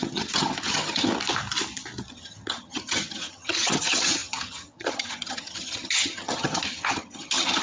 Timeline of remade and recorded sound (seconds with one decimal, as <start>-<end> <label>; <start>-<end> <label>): 0.0-1.1 remade; 1.1-2.1 recorded; 2.1-7.6 remade